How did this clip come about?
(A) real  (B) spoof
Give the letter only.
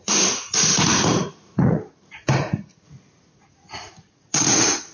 B